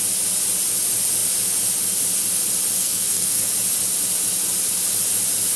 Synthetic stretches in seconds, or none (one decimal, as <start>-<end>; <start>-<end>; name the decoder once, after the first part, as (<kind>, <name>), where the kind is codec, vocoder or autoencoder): 2.8-3.5 (codec, SNAC)